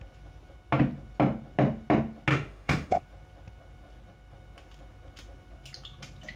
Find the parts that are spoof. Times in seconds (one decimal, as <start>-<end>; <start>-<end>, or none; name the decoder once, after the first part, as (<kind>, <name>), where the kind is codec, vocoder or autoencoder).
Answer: 2.3-3.0 (autoencoder, DAC-VAE)